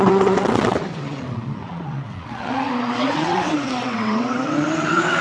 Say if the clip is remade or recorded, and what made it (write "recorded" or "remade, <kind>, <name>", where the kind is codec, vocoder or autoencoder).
remade, vocoder, WaveNeXt